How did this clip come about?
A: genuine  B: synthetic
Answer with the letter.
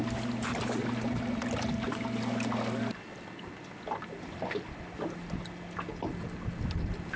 A